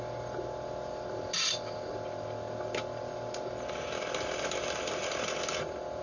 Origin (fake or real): real